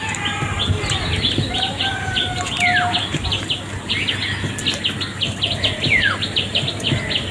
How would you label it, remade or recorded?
recorded